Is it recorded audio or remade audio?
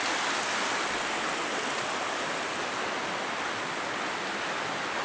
recorded